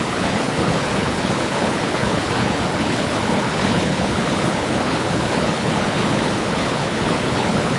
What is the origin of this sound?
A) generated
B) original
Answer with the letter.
A